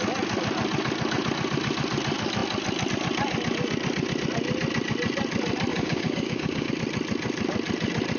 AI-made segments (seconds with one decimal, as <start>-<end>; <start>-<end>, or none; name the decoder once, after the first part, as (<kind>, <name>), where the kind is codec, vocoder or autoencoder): 5.7-6.7 (codec, DAC)